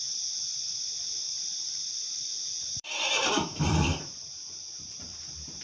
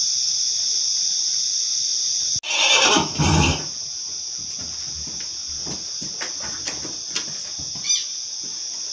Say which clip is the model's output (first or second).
first